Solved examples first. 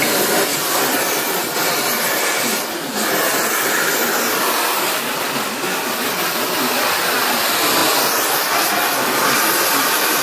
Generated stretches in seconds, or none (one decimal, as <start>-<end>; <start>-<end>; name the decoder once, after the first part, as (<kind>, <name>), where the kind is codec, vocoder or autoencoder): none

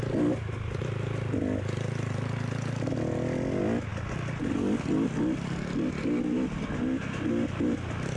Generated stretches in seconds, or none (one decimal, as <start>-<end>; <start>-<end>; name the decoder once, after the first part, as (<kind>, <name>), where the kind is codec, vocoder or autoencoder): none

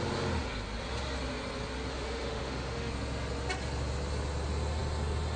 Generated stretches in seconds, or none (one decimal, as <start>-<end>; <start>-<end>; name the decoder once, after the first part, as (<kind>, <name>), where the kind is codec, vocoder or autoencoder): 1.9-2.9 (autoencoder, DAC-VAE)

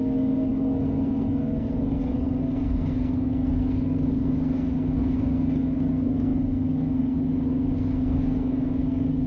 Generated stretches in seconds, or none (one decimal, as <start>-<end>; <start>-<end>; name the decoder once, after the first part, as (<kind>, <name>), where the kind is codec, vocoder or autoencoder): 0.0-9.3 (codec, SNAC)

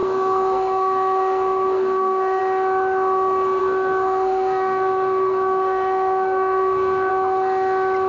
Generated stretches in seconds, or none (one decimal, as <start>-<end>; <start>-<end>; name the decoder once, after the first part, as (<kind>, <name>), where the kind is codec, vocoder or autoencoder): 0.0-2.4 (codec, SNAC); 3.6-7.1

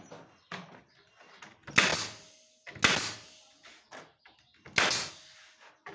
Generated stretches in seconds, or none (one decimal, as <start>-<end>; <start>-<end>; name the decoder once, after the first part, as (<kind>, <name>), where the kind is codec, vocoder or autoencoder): none